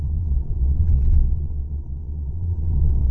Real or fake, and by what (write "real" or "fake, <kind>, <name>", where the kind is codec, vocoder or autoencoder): fake, vocoder, Vocos